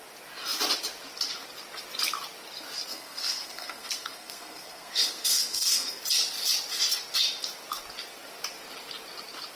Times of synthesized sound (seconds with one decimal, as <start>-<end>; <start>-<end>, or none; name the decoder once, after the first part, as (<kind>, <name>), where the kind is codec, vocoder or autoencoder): 2.9-6.0 (codec, SNAC)